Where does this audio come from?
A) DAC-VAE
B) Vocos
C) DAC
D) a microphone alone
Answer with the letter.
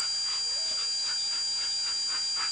D